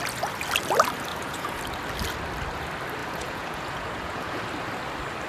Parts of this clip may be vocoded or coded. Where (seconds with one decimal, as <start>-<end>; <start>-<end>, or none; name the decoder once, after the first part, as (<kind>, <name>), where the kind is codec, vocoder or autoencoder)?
1.1-1.6 (vocoder, Vocos); 3.0-4.4